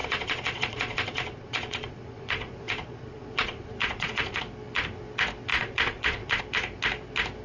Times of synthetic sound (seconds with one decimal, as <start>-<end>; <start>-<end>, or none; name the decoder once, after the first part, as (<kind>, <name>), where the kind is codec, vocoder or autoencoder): 0.0-4.4 (vocoder, Vocos); 5.5-6.4